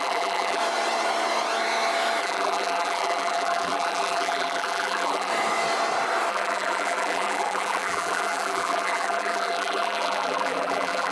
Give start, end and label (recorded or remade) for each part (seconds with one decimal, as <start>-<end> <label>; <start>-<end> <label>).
0.0-0.6 remade; 0.6-2.2 recorded; 2.2-5.3 remade; 5.3-6.3 recorded; 6.3-11.1 remade